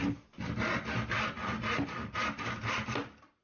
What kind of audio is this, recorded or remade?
recorded